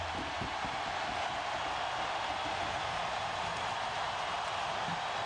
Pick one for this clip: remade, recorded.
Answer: recorded